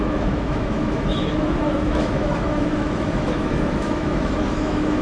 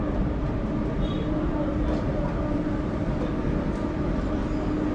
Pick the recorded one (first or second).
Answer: second